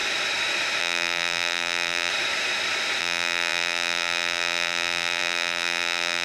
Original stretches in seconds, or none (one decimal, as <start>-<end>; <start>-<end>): 0.0-0.8; 2.1-3.0